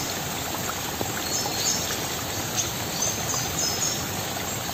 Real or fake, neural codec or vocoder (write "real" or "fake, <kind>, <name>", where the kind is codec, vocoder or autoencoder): real